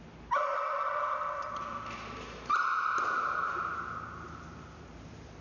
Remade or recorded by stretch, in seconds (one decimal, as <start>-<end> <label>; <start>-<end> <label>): 0.0-5.4 recorded